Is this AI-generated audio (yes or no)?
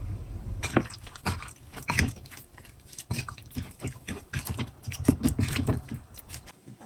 yes